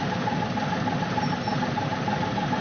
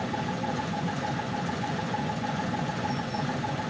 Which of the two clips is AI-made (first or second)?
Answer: second